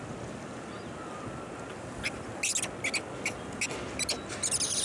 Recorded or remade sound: recorded